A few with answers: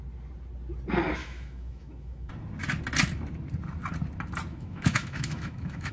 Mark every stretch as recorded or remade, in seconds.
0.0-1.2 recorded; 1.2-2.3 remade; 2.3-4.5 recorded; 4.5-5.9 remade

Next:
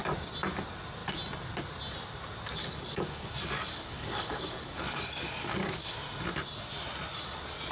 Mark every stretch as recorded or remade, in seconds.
0.0-2.6 recorded; 2.6-5.9 remade; 5.9-7.7 recorded

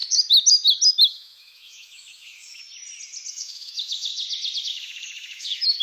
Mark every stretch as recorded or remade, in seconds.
0.0-0.9 recorded; 0.9-2.6 remade; 2.6-3.3 recorded; 3.3-4.1 remade; 4.1-4.6 recorded; 4.6-5.8 remade

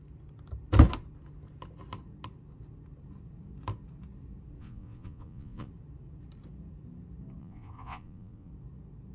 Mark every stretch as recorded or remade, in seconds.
0.0-4.6 recorded; 4.6-5.7 remade; 5.7-7.4 recorded; 7.4-8.5 remade; 8.5-9.1 recorded

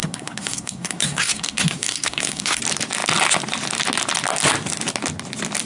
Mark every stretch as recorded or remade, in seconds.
0.0-2.6 remade; 2.6-5.7 recorded

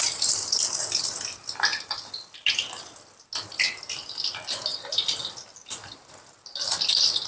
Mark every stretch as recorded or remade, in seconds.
0.0-7.3 recorded

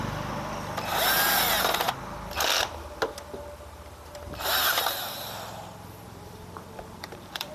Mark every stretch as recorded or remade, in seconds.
0.0-5.0 recorded; 5.0-7.5 remade

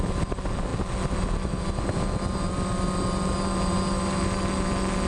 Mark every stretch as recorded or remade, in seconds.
0.0-5.1 recorded